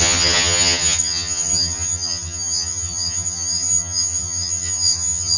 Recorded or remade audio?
remade